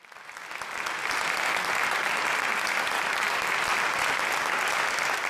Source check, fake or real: real